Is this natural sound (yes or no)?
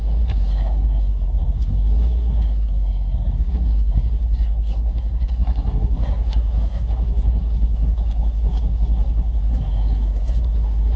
no